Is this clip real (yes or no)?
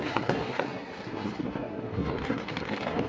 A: no